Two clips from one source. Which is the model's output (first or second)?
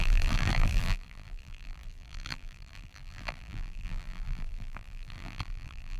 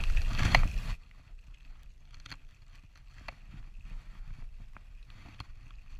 first